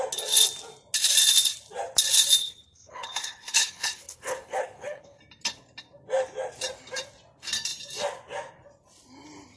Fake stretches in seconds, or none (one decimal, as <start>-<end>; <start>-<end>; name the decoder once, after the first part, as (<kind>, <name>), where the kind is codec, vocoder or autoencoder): 2.4-5.2 (codec, HILCodec)